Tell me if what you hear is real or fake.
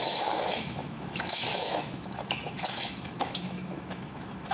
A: fake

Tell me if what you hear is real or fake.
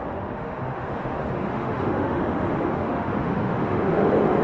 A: fake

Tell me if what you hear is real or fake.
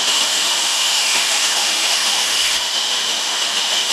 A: fake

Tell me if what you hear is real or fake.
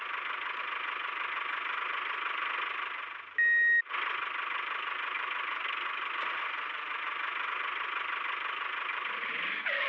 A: real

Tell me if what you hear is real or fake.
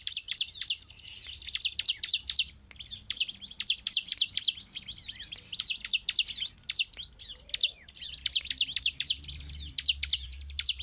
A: real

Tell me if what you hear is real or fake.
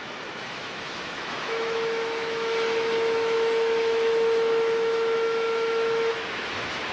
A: fake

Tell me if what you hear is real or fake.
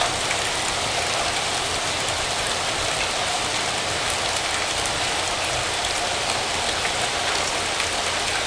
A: real